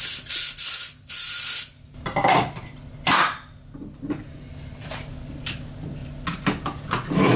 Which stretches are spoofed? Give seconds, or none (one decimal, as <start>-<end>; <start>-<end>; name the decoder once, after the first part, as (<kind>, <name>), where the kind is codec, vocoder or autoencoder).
none

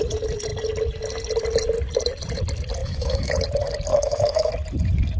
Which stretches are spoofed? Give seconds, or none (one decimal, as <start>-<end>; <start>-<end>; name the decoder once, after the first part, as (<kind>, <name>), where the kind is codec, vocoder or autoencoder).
2.8-3.3 (autoencoder, DAC-VAE); 3.9-4.5